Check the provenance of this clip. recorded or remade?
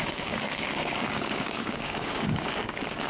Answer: remade